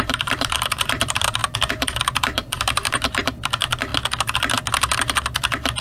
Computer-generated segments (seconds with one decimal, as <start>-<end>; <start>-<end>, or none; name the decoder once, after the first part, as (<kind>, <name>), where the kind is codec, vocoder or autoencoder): 0.0-1.4 (vocoder, BigVGAN v2); 2.2-3.9